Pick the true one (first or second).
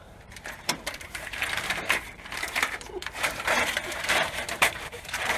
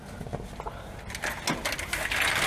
second